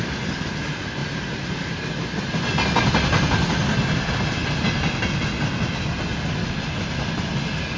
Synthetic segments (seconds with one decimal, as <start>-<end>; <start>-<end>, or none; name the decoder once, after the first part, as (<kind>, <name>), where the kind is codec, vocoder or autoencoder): 1.0-2.5 (vocoder, BigVGAN v2)